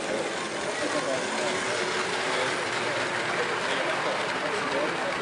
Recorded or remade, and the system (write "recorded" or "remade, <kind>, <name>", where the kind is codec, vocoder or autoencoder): recorded